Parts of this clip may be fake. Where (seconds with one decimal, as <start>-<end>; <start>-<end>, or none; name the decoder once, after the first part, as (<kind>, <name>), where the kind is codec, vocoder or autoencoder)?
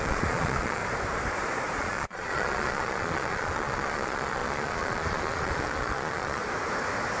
0.0-0.8 (vocoder, Vocos); 1.8-6.4